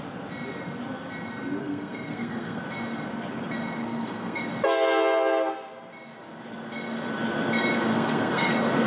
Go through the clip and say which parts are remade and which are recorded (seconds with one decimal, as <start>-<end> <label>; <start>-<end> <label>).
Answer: 0.0-1.6 recorded; 1.6-2.6 remade; 2.6-3.8 recorded; 3.8-4.4 remade; 4.4-7.9 recorded; 7.9-8.5 remade; 8.5-8.9 recorded